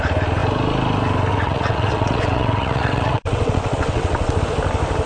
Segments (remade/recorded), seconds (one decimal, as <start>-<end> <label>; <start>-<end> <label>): 0.0-1.3 recorded; 1.3-4.4 remade; 4.4-5.1 recorded